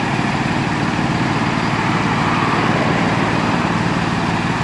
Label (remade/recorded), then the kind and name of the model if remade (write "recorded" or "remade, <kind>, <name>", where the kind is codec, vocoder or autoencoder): recorded